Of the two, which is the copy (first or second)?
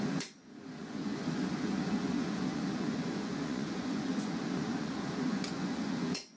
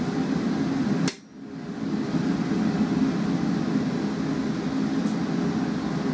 first